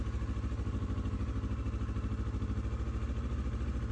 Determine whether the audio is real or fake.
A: real